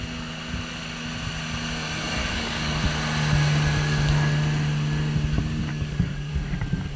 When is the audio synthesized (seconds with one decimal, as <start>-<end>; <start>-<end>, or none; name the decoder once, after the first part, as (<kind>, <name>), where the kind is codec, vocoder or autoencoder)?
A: 2.2-2.8 (codec, DAC); 5.7-6.3